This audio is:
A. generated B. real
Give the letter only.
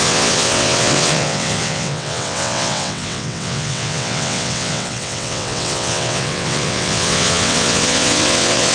A